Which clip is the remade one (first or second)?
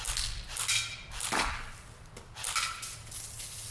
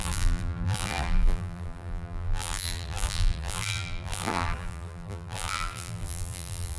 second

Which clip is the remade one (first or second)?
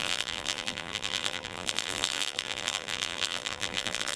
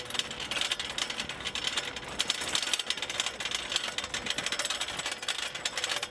first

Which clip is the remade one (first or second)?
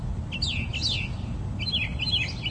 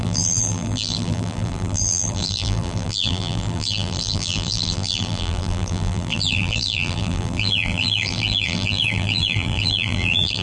second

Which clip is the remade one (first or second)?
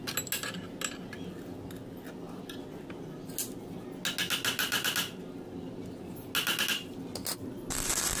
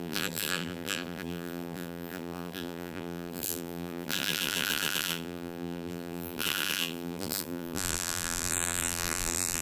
second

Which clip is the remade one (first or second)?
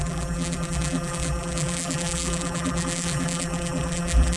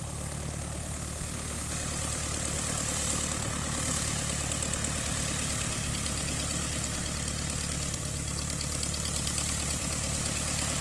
first